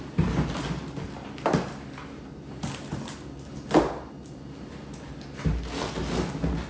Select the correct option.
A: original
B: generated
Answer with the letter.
A